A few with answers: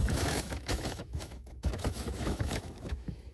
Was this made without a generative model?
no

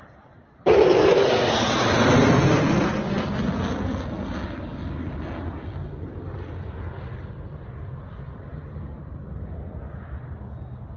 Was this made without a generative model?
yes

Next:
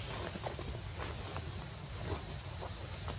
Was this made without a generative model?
yes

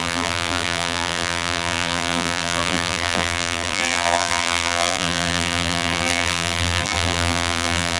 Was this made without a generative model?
no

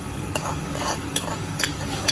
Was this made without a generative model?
no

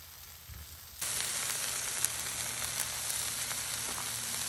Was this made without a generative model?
yes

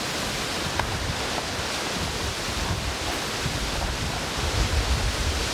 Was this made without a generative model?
yes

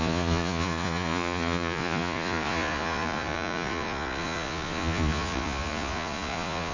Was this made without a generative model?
no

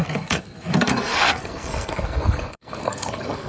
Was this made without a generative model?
no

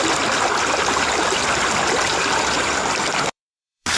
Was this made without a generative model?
no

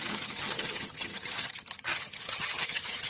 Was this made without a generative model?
no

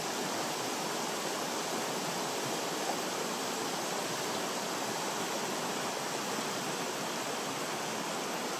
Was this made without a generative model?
yes